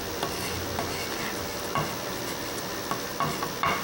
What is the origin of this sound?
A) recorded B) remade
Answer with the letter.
A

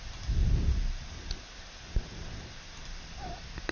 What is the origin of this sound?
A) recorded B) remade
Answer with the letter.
A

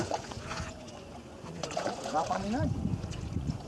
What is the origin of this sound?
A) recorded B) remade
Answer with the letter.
B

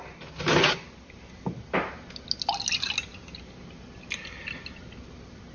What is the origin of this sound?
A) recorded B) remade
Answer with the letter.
A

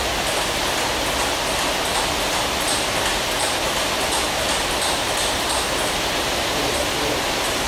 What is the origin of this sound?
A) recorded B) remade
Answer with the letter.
A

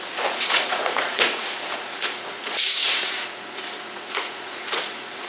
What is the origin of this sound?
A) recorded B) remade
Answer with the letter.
B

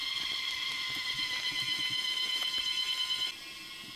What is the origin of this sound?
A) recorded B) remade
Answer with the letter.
A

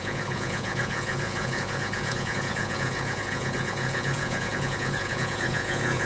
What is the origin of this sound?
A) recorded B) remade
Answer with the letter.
B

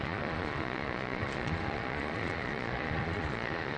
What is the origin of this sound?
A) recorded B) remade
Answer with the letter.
B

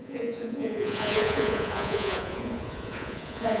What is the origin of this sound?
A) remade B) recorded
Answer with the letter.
A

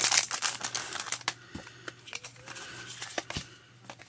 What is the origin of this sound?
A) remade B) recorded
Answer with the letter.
B